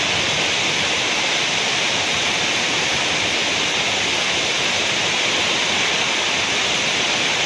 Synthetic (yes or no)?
no